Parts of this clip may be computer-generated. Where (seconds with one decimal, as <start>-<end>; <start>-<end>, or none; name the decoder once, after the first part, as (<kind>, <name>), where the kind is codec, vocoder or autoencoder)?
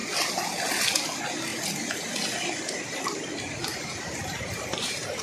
3.7-5.2 (vocoder, BigVGAN v2)